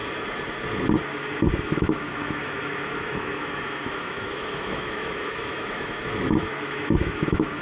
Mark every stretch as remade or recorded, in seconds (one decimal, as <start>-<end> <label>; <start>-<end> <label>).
0.0-1.6 recorded; 1.6-7.6 remade